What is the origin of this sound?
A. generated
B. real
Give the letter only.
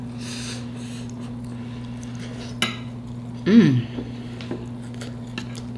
B